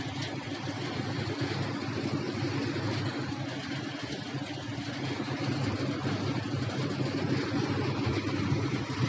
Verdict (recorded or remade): recorded